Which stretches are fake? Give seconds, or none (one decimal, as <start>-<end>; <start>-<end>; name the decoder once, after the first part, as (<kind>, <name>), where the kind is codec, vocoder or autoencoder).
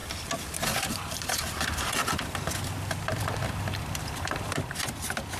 3.2-5.4 (vocoder, BigVGAN v2)